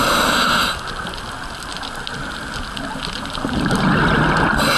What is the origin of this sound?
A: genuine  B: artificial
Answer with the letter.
A